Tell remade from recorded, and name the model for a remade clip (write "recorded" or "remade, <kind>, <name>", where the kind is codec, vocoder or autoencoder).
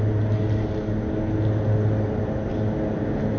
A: recorded